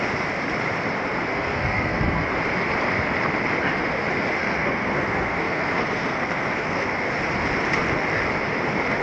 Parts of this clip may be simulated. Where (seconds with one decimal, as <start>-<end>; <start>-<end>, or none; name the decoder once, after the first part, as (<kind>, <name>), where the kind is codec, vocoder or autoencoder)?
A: 1.3-2.3 (codec, SNAC); 4.4-7.1